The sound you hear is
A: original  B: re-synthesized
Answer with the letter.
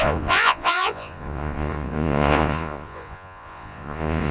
B